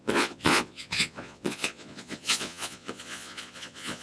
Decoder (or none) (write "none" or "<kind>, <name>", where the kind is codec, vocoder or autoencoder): vocoder, Vocos